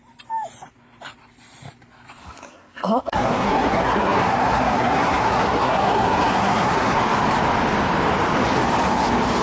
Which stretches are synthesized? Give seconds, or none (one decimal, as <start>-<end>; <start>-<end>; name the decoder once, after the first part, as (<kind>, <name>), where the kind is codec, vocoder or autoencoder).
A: 2.2-7.0 (codec, SNAC)